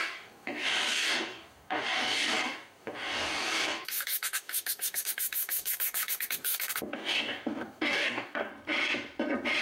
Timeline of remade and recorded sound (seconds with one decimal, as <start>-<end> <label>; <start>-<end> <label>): 0.0-8.5 remade; 8.5-9.6 recorded